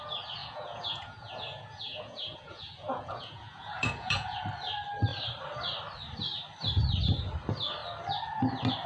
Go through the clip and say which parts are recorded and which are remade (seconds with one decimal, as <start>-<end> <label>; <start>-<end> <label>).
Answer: 0.0-0.4 recorded; 0.4-4.4 remade; 4.4-8.9 recorded